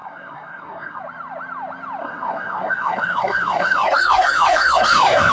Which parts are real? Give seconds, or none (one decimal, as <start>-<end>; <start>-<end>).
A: 1.0-2.0